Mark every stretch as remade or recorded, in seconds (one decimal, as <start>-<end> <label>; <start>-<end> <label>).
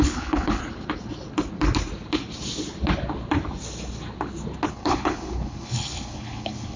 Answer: 0.0-0.6 remade; 0.6-4.7 recorded; 4.7-6.8 remade